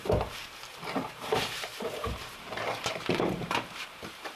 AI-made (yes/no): yes